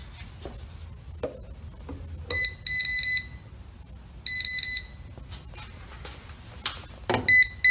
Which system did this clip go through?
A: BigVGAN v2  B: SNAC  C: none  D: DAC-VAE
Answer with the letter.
C